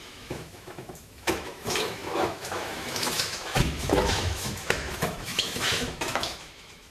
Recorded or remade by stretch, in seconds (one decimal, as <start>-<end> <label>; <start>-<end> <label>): 0.0-6.9 remade